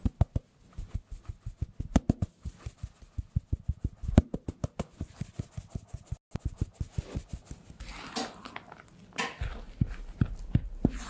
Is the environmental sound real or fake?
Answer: real